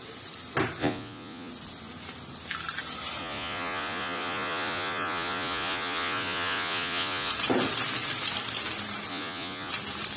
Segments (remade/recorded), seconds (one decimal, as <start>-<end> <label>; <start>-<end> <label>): 0.0-0.8 recorded; 0.8-1.5 remade; 1.5-3.2 recorded; 3.2-7.3 remade; 7.3-9.1 recorded; 9.1-9.7 remade; 9.7-10.2 recorded